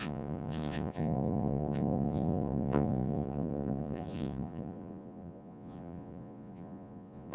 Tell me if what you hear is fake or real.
fake